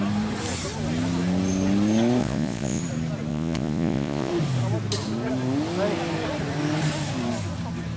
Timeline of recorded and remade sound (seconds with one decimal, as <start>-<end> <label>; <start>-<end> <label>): 0.0-2.2 recorded; 2.2-2.8 remade; 2.8-3.3 recorded; 3.3-4.3 remade; 4.3-8.0 recorded